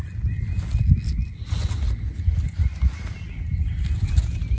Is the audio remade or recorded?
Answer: recorded